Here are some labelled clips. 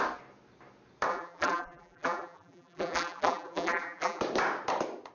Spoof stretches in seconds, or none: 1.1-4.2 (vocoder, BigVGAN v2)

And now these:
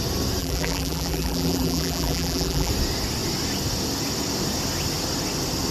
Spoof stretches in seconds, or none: 0.4-2.7 (vocoder, BigVGAN v2)